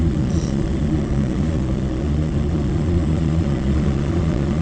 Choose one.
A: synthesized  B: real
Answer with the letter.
A